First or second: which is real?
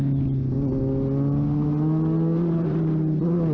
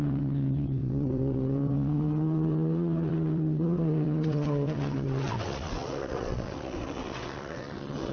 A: first